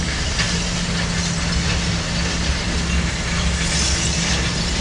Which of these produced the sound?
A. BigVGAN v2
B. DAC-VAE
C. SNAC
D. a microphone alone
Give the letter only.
D